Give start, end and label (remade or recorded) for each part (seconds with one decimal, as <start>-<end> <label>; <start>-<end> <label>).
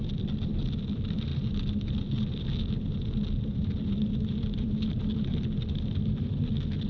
0.0-6.9 recorded